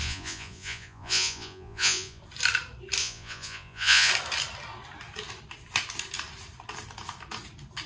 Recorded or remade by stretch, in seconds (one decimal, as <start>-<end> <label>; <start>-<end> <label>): 0.0-2.2 remade; 2.2-3.0 recorded; 3.0-4.1 remade; 4.1-7.9 recorded